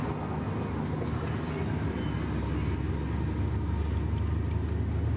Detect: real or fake real